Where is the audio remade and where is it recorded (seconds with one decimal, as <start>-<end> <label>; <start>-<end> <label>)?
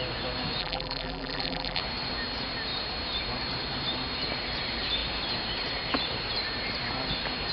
0.0-0.6 recorded; 0.6-1.8 remade; 1.8-7.5 recorded